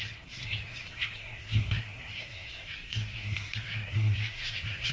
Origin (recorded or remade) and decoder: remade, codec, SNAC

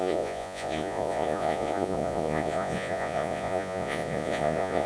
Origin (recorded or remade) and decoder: remade, vocoder, Vocos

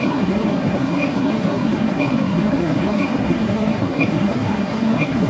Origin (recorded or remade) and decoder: remade, codec, SNAC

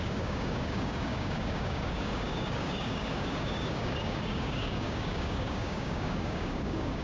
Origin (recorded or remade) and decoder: remade, codec, DAC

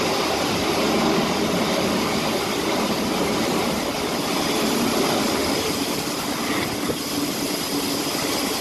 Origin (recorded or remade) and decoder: recorded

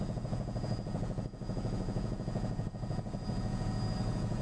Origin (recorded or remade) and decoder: remade, vocoder, Vocos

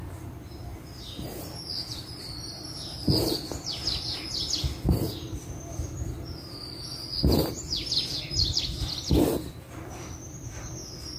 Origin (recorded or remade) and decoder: recorded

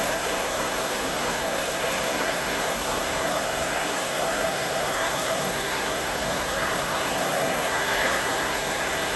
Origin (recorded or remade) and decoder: remade, codec, SNAC